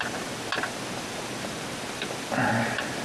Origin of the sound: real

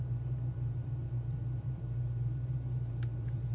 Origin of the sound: fake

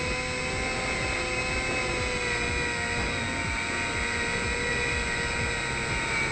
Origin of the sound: real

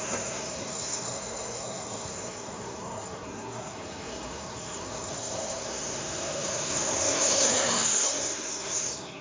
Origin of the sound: fake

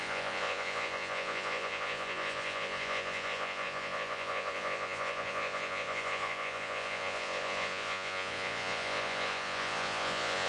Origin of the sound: fake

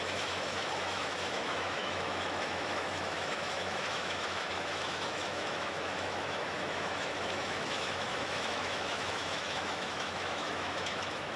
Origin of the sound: fake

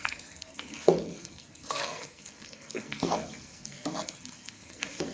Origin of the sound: fake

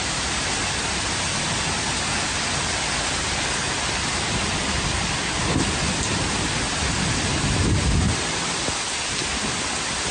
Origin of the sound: real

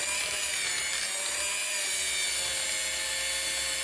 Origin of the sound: real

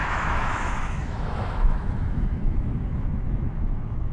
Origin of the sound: fake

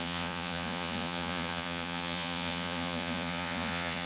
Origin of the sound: fake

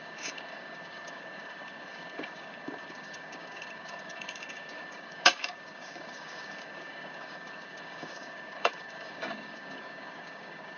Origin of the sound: fake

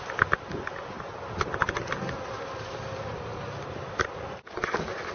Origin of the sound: real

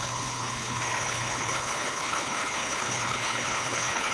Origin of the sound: fake